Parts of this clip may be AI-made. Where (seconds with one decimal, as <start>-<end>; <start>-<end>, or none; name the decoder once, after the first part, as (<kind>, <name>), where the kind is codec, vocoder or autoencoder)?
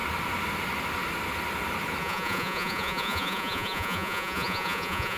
2.0-5.2 (vocoder, Vocos)